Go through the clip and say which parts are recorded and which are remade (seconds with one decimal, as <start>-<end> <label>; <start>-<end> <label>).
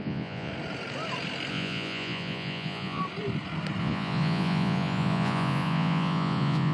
0.0-0.5 remade; 0.5-1.5 recorded; 1.5-3.0 remade; 3.0-3.8 recorded; 3.8-6.7 remade